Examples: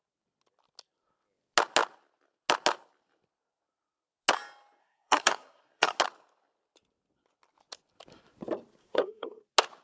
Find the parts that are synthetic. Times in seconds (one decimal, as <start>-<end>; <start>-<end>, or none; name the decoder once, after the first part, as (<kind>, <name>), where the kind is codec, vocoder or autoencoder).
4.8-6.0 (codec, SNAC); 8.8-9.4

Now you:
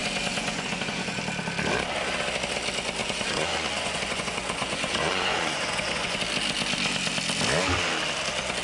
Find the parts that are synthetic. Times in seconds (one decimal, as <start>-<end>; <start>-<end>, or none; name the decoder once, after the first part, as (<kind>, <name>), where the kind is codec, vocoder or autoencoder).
0.0-1.2 (vocoder, Vocos); 3.0-6.2

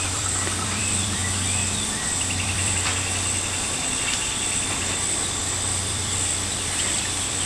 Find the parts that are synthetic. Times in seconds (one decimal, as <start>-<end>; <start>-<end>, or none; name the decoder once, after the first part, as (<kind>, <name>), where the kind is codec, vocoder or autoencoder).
0.0-1.2 (vocoder, BigVGAN v2); 2.0-2.9; 4.7-7.5

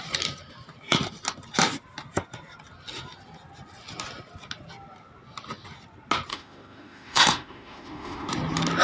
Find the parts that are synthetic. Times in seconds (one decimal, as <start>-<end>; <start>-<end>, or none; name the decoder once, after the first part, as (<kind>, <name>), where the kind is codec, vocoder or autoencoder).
6.3-8.3 (autoencoder, DAC-VAE)